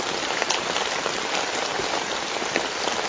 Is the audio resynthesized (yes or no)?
no